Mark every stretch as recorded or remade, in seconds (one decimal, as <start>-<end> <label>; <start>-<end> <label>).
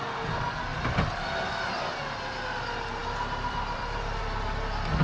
0.0-0.7 recorded; 0.7-1.9 remade; 1.9-3.0 recorded; 3.0-4.2 remade; 4.2-5.0 recorded